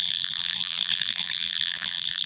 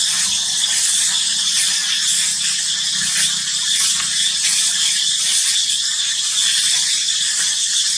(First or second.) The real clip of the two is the second